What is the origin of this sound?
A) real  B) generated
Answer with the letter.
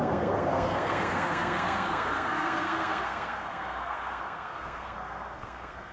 B